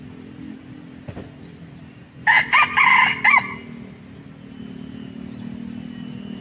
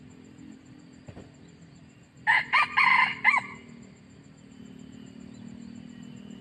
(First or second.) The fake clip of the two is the second